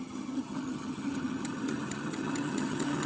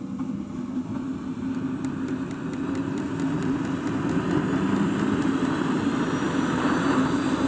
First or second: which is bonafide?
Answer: second